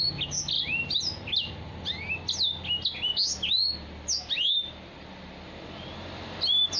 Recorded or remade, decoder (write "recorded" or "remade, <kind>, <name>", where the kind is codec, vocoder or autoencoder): recorded